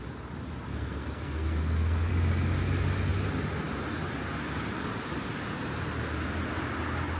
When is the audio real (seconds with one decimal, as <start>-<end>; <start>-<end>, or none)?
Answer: 0.0-0.7; 2.1-7.2